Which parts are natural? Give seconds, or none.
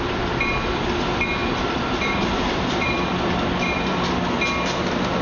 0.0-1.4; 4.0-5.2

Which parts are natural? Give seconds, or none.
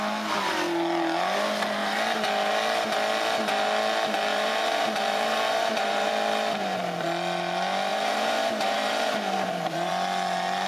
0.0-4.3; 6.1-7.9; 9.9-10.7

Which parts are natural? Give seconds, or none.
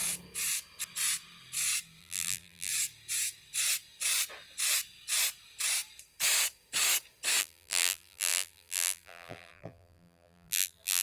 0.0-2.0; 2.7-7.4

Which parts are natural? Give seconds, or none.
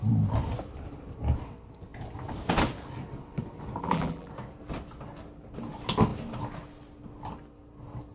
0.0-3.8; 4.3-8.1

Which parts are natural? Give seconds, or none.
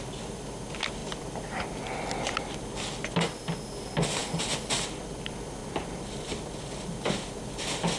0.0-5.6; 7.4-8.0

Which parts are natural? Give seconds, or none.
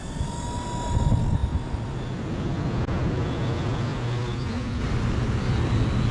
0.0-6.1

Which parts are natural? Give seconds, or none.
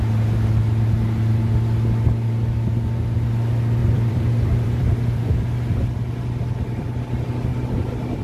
0.0-3.8; 5.4-8.2